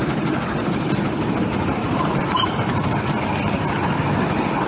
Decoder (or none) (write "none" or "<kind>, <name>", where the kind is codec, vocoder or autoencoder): none